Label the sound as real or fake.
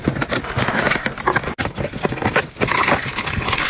real